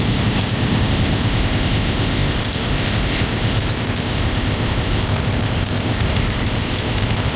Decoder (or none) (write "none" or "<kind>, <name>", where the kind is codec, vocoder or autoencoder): codec, ZipCodec